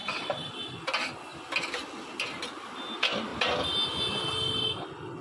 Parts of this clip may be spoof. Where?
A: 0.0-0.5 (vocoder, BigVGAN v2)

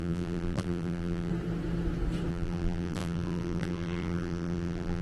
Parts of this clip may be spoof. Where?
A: 0.0-1.3 (vocoder, BigVGAN v2); 2.3-5.0

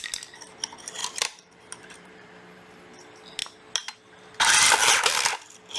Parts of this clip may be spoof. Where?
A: 1.0-2.3 (vocoder, BigVGAN v2)

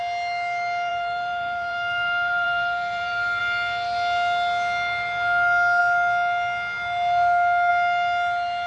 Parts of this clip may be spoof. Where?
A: 0.9-3.4 (vocoder, BigVGAN v2)